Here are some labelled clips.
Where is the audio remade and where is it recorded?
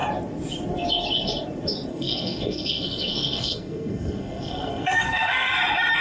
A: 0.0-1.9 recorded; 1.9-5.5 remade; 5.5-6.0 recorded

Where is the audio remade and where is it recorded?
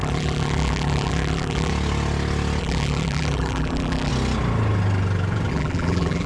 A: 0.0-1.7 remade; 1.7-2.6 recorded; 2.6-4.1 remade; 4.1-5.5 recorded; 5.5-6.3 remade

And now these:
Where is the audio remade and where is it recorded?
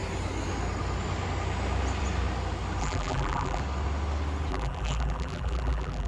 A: 0.0-2.8 recorded; 2.8-3.6 remade; 3.6-4.5 recorded; 4.5-6.1 remade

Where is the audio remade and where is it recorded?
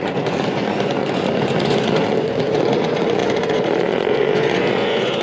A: 0.0-5.2 remade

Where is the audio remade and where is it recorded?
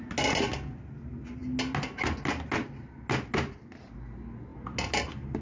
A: 0.0-5.4 recorded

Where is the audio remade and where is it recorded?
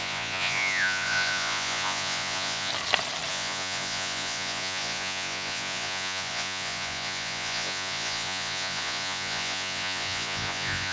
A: 0.0-2.7 remade; 2.7-3.3 recorded; 3.3-10.9 remade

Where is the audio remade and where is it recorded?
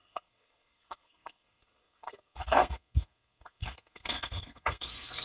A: 0.0-5.2 remade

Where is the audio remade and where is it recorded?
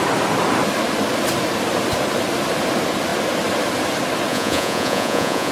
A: 0.0-4.3 recorded; 4.3-5.5 remade